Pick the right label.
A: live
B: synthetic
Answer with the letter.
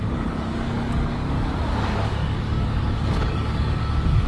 B